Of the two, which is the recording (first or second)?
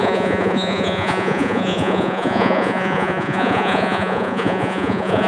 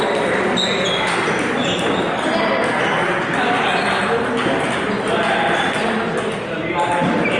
second